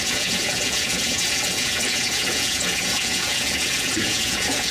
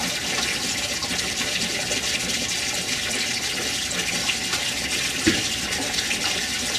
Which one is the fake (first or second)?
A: first